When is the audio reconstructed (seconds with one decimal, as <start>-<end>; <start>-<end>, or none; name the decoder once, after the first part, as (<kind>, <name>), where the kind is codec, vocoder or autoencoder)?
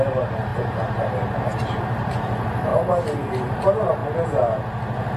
0.0-2.7 (vocoder, BigVGAN v2); 3.3-4.0